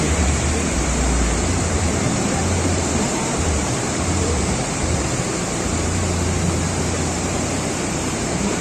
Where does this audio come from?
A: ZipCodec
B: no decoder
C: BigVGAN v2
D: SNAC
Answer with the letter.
C